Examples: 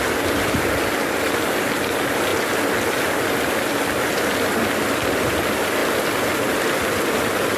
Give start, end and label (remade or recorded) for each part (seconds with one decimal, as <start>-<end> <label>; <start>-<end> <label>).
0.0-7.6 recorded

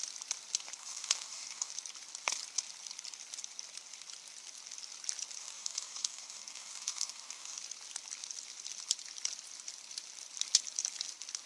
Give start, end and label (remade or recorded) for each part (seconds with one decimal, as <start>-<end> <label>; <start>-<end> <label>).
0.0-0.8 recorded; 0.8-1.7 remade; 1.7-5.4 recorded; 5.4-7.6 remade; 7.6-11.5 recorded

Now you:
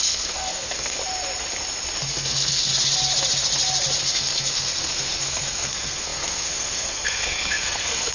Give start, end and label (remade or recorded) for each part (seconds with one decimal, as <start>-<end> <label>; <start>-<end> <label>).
0.0-1.0 remade; 1.0-2.1 recorded; 2.1-2.7 remade; 2.7-4.0 recorded; 4.0-8.1 remade

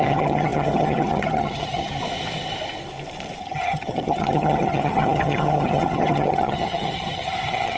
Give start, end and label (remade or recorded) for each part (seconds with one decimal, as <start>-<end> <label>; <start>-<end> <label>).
0.0-2.0 remade; 2.0-3.4 recorded; 3.4-7.8 remade

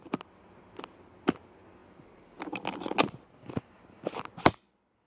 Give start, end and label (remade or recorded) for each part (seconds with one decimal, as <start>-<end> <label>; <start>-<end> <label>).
0.0-5.1 recorded

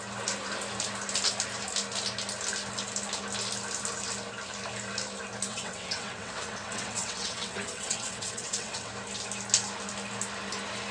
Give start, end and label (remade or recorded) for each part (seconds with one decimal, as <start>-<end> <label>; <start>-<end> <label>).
0.0-5.5 recorded; 5.5-8.9 remade; 8.9-10.9 recorded

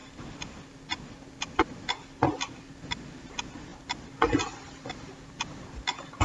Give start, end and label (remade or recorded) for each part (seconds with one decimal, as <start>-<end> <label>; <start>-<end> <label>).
0.0-6.2 recorded